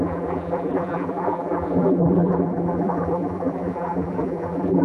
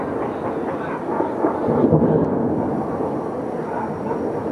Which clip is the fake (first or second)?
first